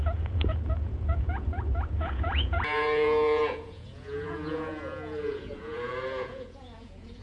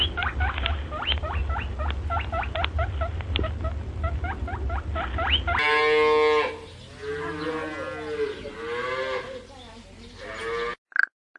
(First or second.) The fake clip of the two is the first